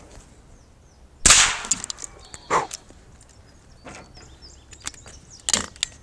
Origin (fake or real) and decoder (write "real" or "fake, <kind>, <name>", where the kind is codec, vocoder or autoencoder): real